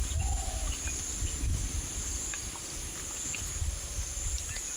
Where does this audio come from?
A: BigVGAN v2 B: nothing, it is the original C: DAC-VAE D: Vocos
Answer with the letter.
B